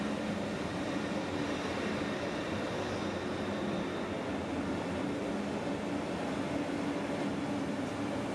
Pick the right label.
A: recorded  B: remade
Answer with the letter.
A